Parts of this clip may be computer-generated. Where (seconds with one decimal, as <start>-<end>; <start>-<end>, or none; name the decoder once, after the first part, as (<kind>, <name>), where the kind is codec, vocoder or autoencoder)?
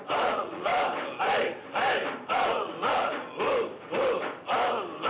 0.0-0.7 (vocoder, Vocos); 2.3-3.2